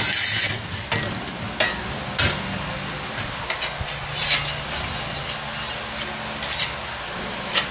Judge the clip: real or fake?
real